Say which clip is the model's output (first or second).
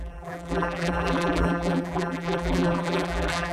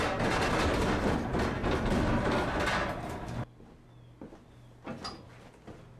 first